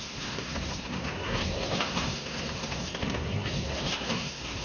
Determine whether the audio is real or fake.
fake